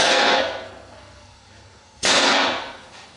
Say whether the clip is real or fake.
fake